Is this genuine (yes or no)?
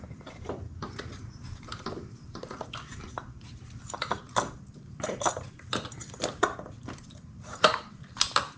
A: no